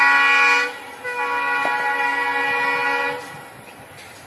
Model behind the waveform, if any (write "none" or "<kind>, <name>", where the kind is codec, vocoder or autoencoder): none